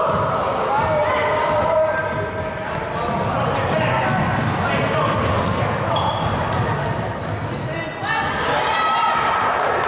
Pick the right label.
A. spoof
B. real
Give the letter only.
B